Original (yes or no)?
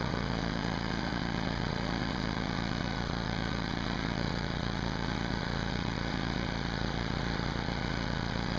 no